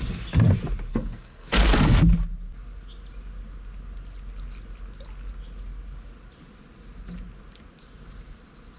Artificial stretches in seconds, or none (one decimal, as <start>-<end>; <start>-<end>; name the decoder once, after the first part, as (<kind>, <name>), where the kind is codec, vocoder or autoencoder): 0.9-1.5 (codec, SNAC)